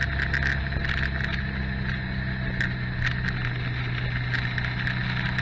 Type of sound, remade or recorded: recorded